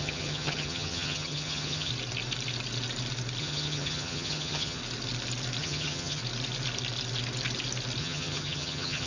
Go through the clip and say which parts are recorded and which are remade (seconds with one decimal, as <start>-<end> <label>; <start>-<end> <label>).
0.0-1.9 remade; 1.9-3.4 recorded; 3.4-4.8 remade; 4.8-5.6 recorded; 5.6-6.2 remade; 6.2-8.0 recorded; 8.0-9.1 remade